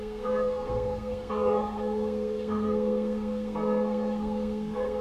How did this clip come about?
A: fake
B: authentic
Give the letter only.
A